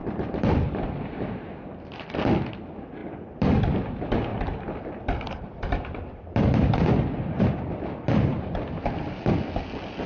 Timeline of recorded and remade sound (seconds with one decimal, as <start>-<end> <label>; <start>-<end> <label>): 0.0-0.7 remade; 0.7-3.0 recorded; 3.0-3.6 remade; 3.6-4.3 recorded; 4.3-7.4 remade; 7.4-10.1 recorded